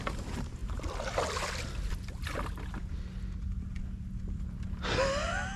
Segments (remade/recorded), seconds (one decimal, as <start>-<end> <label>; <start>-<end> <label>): 0.0-5.6 recorded